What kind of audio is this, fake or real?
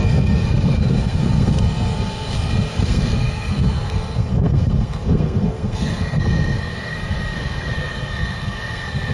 fake